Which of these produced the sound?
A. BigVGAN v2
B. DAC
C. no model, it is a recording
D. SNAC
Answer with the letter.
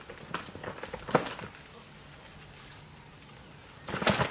C